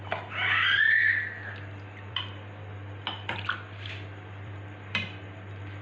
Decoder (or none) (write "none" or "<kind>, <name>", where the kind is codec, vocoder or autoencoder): vocoder, BigVGAN v2